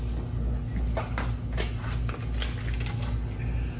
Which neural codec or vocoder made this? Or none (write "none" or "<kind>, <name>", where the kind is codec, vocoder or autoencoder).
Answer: none